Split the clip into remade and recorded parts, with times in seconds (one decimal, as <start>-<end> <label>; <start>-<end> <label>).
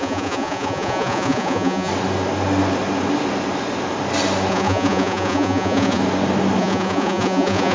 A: 0.0-1.9 remade; 1.9-4.5 recorded; 4.5-6.0 remade; 6.0-6.6 recorded; 6.6-7.7 remade